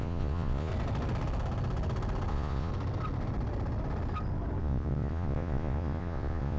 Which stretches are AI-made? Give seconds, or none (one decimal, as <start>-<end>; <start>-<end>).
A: 0.0-0.7; 2.3-2.7; 4.6-6.6